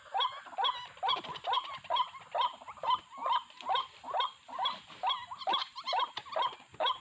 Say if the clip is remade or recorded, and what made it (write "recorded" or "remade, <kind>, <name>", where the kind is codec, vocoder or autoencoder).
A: recorded